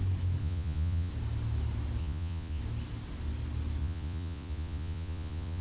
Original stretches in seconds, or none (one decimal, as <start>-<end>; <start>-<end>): 0.0-0.4; 1.1-2.0; 2.6-3.8